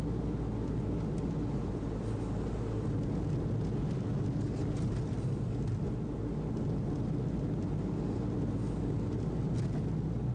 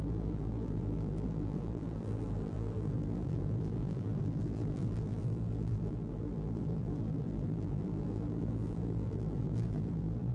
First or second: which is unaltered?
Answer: first